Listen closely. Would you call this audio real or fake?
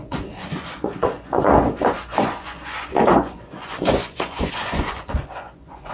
fake